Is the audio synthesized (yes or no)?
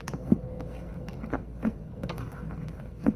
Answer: yes